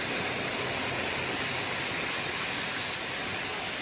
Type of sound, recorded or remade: recorded